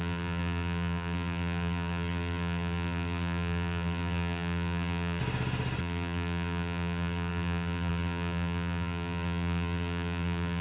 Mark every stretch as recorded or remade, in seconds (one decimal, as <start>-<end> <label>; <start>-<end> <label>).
0.0-5.2 remade; 5.2-5.8 recorded; 5.8-10.6 remade